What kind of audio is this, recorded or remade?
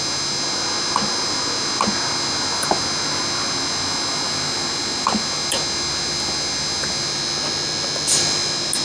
recorded